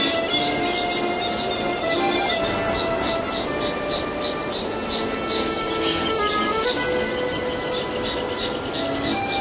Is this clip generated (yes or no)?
no